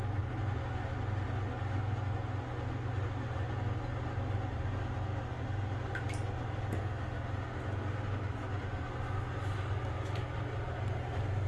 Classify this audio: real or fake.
real